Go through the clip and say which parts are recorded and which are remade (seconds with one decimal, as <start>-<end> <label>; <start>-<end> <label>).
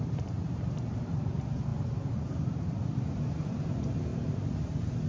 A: 0.0-4.1 remade; 4.1-5.1 recorded